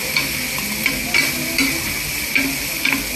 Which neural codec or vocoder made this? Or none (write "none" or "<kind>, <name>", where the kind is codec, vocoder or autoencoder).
none